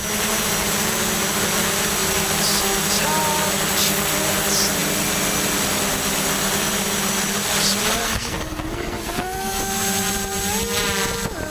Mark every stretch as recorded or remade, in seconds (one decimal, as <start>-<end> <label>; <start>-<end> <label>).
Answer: 0.0-8.0 recorded; 8.0-9.6 remade; 9.6-11.5 recorded